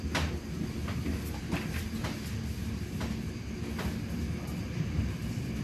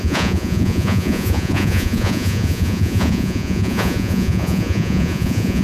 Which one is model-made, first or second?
second